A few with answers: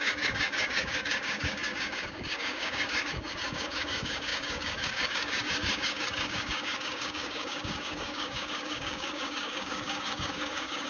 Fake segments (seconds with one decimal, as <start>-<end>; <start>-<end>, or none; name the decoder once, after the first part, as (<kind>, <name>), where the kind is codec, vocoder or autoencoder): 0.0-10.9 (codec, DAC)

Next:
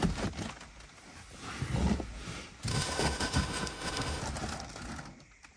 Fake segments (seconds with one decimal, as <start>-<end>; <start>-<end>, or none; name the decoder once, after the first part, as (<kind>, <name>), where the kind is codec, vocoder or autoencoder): 2.7-4.2 (autoencoder, DAC-VAE)

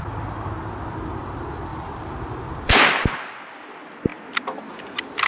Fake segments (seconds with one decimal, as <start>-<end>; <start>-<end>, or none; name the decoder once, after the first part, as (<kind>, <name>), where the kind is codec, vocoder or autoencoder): 1.7-2.8 (vocoder, BigVGAN v2)

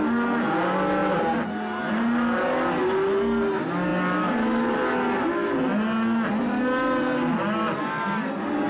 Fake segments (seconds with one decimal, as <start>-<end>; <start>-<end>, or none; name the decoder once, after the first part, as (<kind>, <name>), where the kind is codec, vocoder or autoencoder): none

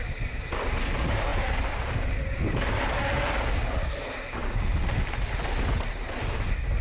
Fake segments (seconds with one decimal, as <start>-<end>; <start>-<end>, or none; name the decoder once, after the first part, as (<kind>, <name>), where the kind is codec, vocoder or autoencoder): none

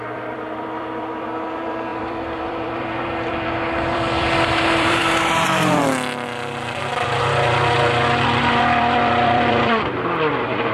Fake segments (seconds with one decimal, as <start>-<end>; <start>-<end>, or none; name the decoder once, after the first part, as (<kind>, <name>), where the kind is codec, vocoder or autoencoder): 0.0-5.0 (vocoder, BigVGAN v2); 8.6-10.7